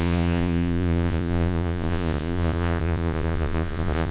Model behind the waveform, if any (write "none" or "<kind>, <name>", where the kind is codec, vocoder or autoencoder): vocoder, Vocos